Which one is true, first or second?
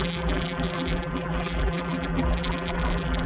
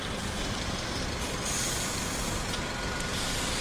second